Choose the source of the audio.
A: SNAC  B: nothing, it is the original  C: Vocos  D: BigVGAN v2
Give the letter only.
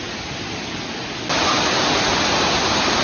B